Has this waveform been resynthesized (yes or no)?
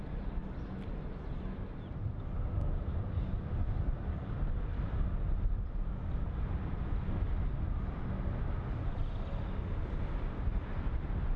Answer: no